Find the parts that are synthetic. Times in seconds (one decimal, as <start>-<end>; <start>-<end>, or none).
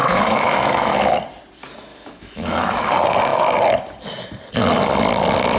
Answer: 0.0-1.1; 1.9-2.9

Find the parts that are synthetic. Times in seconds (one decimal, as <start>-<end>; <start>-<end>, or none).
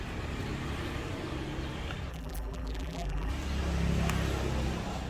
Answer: 2.1-3.3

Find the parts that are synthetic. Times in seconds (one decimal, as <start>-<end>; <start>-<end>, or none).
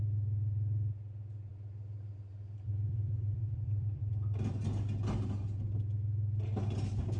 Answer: 1.5-4.1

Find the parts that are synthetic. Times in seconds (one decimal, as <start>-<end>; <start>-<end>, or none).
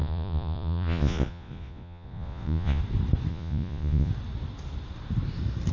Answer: 0.0-2.8; 3.3-4.1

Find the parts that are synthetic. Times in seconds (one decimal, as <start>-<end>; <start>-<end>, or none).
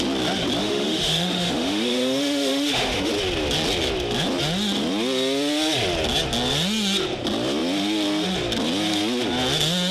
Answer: 0.6-3.1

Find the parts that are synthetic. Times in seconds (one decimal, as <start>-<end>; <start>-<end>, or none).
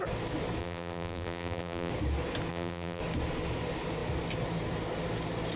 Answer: 0.6-1.9; 2.5-3.0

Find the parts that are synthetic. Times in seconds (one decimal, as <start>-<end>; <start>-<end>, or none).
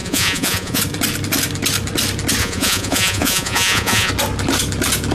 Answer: 0.0-0.8; 2.4-4.1